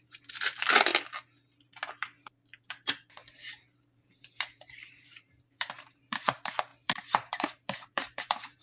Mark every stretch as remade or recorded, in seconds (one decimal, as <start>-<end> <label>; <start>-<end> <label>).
0.0-0.9 remade; 0.9-1.9 recorded; 1.9-8.6 remade